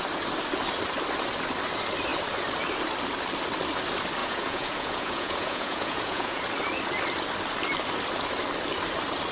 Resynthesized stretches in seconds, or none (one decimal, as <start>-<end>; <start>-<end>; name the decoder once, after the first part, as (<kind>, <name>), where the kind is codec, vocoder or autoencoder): 4.2-6.4 (vocoder, Vocos)